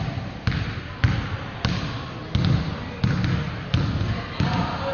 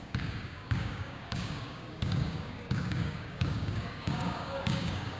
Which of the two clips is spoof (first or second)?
second